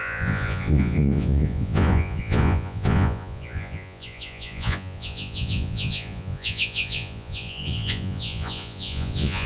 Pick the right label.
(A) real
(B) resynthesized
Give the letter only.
B